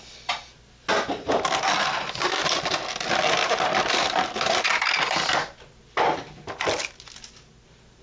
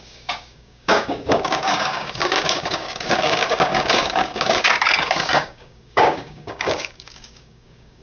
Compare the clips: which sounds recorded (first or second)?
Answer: first